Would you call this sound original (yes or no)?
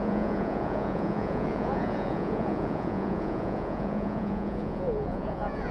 no